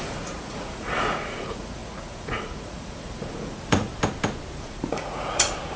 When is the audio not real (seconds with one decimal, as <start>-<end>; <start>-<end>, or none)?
0.0-3.9; 4.5-5.8